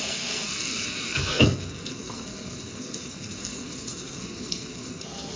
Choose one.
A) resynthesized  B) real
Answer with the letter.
A